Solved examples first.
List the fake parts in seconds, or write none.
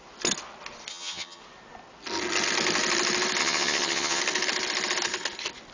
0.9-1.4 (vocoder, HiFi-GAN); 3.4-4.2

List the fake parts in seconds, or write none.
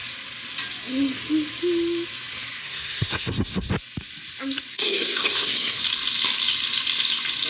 2.6-3.7 (codec, SNAC); 4.7-5.8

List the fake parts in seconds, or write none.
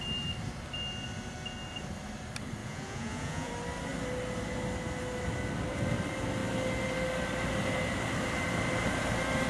2.6-3.5 (vocoder, Vocos)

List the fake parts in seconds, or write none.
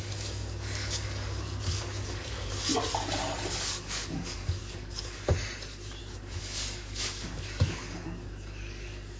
0.0-2.7 (codec, DAC); 3.5-5.3; 6.0-9.2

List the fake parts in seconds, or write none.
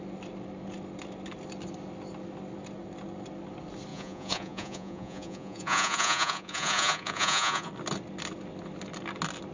3.9-7.7 (vocoder, Vocos)